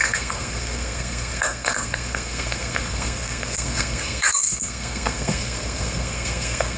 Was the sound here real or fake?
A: fake